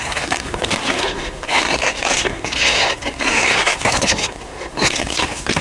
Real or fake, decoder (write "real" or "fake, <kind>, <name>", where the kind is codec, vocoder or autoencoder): fake, codec, SNAC